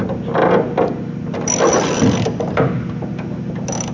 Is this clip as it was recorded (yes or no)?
yes